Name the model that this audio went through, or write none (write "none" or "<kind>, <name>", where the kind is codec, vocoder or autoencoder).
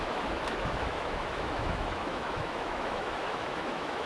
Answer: autoencoder, DAC-VAE